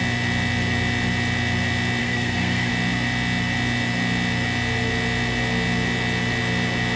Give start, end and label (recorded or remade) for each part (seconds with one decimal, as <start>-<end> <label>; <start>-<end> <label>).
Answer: 0.0-2.0 recorded; 2.0-2.7 remade; 2.7-7.0 recorded